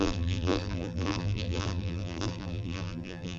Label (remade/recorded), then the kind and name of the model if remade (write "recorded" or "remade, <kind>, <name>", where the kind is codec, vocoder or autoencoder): remade, vocoder, BigVGAN v2